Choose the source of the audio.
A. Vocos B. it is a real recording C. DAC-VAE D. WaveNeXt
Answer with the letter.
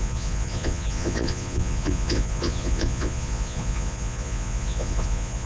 A